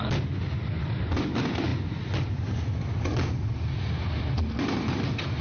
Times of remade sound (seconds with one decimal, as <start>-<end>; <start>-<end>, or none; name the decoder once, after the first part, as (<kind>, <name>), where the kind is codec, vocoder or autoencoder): none